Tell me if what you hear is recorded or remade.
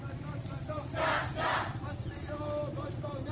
remade